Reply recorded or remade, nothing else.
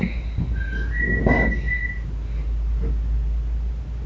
recorded